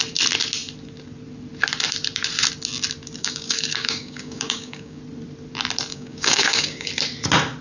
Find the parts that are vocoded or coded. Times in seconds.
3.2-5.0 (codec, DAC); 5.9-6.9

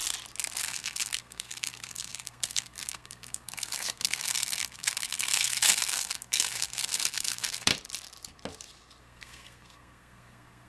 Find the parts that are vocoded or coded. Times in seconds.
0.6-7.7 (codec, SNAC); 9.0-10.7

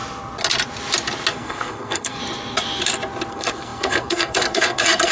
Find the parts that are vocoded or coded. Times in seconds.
1.3-2.2 (codec, SNAC); 3.3-5.1

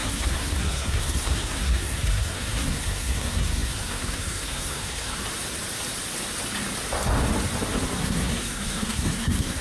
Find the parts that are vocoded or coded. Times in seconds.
0.0-5.2 (codec, SNAC); 8.0-9.6